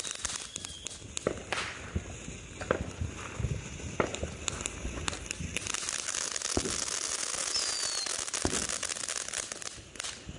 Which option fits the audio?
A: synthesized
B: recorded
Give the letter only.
B